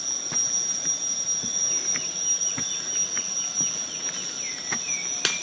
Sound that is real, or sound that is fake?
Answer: real